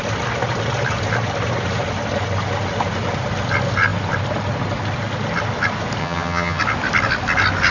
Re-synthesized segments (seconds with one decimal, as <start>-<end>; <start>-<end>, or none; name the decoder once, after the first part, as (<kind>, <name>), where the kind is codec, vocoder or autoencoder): 6.0-6.6 (vocoder, HiFi-GAN)